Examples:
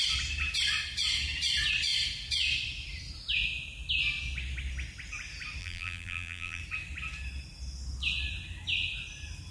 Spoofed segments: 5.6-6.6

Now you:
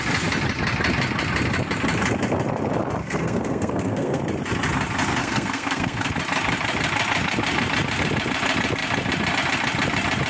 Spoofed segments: 3.0-4.2; 5.2-6.1

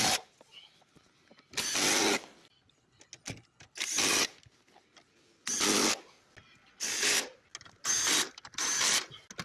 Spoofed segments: none

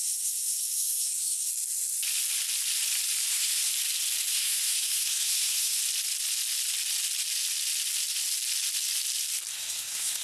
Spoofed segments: 0.0-1.5; 3.3-3.7; 4.3-5.8; 9.5-10.2

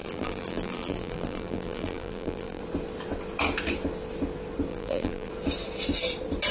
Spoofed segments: 0.0-2.6; 4.7-5.3

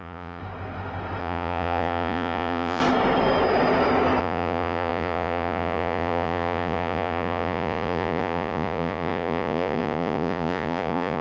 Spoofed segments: 0.0-0.4; 1.2-2.8; 4.2-11.2

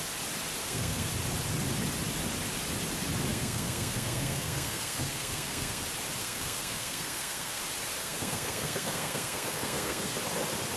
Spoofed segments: 0.6-1.1; 3.3-5.8; 6.2-7.6; 8.0-10.2

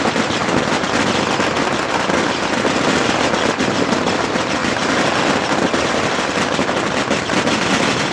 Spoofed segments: none